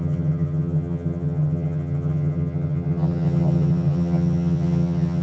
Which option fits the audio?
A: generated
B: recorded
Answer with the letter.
A